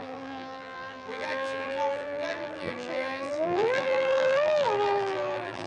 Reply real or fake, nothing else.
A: fake